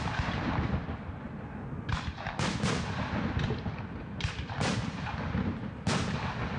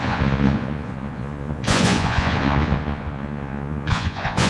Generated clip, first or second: second